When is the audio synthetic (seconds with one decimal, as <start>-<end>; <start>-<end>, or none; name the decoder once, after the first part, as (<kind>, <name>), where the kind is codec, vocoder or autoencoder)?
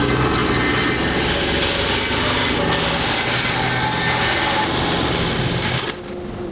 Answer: none